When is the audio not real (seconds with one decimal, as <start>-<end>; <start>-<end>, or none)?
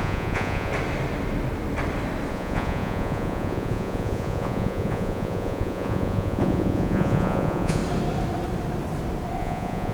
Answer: 0.0-0.7; 2.3-7.8; 9.4-9.9